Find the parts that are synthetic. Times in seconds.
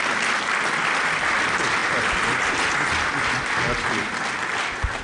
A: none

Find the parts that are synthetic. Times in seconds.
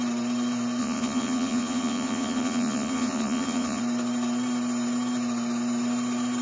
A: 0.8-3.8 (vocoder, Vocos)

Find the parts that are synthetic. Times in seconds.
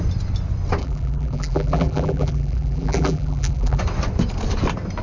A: 0.8-3.8 (vocoder, BigVGAN v2)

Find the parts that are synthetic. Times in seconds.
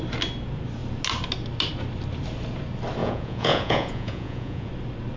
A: 3.0-4.7 (vocoder, Vocos)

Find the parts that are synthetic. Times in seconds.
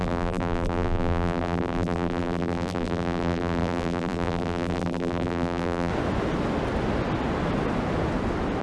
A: 0.0-5.9 (vocoder, BigVGAN v2)